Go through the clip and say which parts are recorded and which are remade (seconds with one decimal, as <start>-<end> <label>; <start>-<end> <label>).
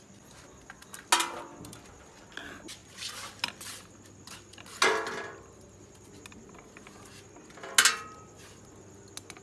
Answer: 0.0-9.4 recorded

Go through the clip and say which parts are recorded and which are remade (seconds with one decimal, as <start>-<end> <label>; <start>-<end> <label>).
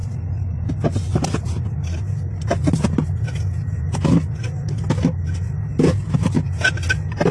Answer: 0.0-7.3 recorded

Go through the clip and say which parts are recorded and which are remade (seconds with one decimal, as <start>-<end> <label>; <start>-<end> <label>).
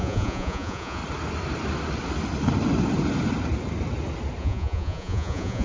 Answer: 0.0-1.0 remade; 1.0-4.4 recorded; 4.4-5.6 remade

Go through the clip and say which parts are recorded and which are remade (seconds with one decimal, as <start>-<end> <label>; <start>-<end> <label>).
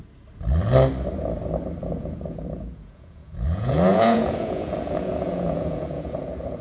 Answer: 0.0-1.8 recorded; 1.8-6.6 remade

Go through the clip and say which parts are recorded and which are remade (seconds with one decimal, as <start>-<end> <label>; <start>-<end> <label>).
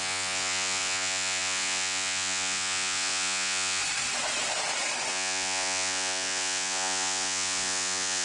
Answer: 0.0-3.8 remade; 3.8-5.1 recorded; 5.1-8.2 remade